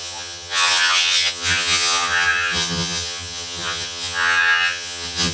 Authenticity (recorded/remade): remade